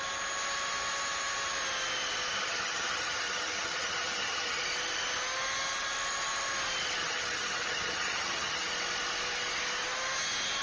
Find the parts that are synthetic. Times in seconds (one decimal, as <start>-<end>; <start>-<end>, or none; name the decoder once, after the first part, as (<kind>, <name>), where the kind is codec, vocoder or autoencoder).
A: 2.3-4.6 (vocoder, HiFi-GAN); 7.0-8.7